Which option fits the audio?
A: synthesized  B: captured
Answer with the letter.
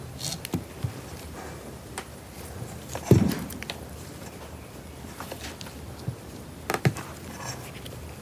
B